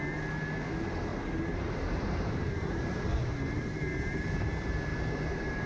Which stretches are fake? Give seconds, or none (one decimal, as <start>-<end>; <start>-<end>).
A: 1.1-4.5; 4.9-5.7